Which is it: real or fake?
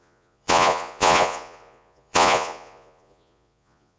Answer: fake